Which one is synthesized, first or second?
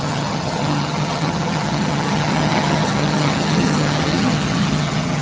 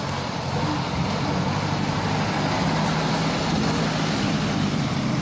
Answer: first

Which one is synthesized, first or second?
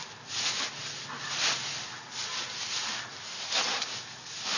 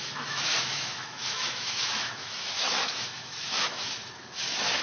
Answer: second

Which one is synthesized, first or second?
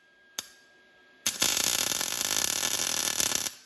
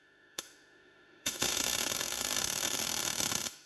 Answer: second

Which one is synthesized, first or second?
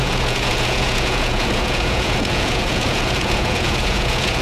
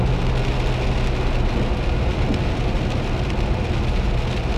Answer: first